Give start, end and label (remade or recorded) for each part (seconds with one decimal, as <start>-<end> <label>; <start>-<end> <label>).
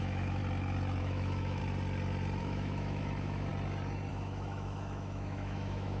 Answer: 0.0-0.4 remade; 0.4-1.0 recorded; 1.0-1.6 remade; 1.6-2.4 recorded; 2.4-3.5 remade; 3.5-4.1 recorded; 4.1-6.0 remade